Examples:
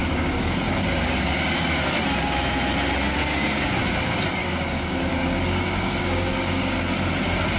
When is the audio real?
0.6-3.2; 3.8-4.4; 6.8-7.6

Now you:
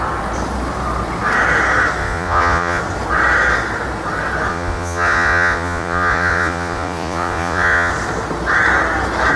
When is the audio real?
0.0-2.0; 2.8-4.5; 7.9-9.4

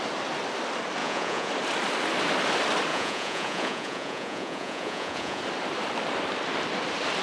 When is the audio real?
0.0-1.0; 1.5-2.9; 5.4-7.2